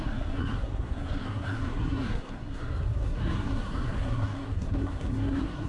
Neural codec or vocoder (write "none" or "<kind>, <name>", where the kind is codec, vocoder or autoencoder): codec, SNAC